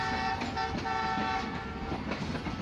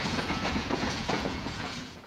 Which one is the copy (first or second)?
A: second